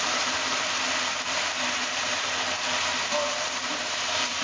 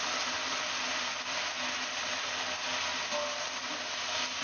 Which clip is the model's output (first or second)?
first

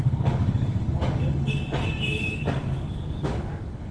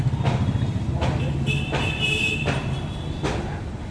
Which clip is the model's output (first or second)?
first